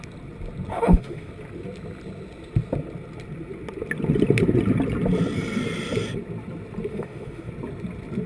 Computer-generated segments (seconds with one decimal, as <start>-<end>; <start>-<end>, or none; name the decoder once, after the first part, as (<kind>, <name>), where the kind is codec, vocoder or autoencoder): 0.7-1.3 (autoencoder, DAC-VAE); 6.9-7.5